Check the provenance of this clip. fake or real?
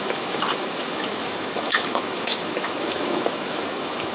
fake